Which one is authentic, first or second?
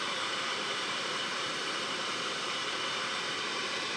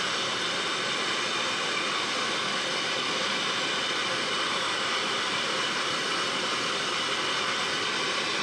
second